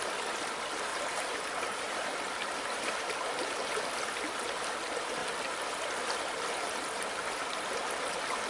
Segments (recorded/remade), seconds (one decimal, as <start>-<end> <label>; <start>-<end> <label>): 0.0-0.9 recorded; 0.9-3.8 remade; 3.8-5.2 recorded; 5.2-5.9 remade; 5.9-8.5 recorded